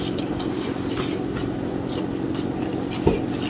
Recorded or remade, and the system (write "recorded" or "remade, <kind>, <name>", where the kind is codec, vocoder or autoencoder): recorded